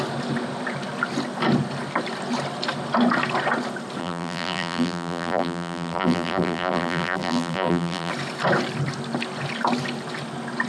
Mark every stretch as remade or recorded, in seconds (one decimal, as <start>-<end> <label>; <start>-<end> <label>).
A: 0.0-4.0 recorded; 4.0-8.1 remade; 8.1-10.7 recorded